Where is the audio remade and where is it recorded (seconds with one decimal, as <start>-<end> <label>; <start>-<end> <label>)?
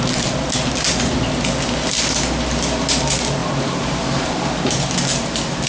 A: 0.0-5.7 recorded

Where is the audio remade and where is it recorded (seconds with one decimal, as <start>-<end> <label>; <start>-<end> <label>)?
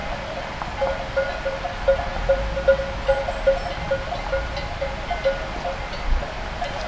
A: 0.0-6.9 recorded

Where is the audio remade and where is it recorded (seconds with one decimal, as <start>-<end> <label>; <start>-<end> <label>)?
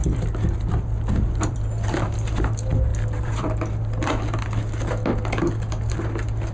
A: 0.0-2.1 remade; 2.1-2.9 recorded; 2.9-4.9 remade; 4.9-6.5 recorded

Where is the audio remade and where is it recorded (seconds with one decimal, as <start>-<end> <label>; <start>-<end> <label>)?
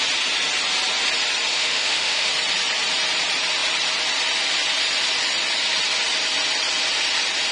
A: 0.0-1.5 recorded; 1.5-2.3 remade; 2.3-7.5 recorded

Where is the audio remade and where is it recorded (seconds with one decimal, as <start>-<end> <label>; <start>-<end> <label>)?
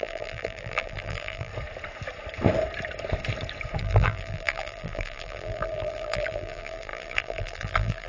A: 0.0-1.5 remade; 1.5-3.8 recorded; 3.8-8.1 remade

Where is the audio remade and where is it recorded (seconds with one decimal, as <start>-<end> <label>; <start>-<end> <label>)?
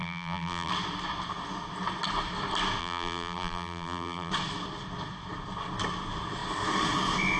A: 0.0-0.7 remade; 0.7-2.8 recorded; 2.8-4.3 remade; 4.3-7.4 recorded